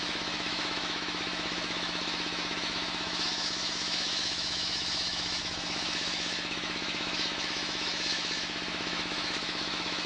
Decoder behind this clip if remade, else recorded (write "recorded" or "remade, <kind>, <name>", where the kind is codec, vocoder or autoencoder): remade, autoencoder, DAC-VAE